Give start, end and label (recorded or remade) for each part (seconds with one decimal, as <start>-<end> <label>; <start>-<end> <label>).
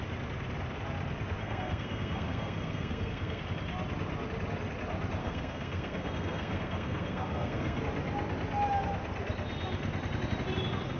0.0-1.4 recorded; 1.4-3.4 remade; 3.4-5.2 recorded; 5.2-7.8 remade; 7.8-11.0 recorded